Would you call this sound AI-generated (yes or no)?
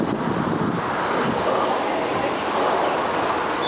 no